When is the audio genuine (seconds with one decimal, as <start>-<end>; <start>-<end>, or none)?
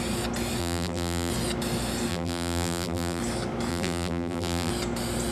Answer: 0.0-0.6; 1.3-2.1; 3.2-3.7; 4.7-5.3